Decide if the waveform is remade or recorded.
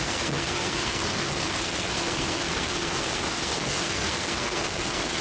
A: remade